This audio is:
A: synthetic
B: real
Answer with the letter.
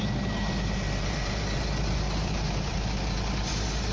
A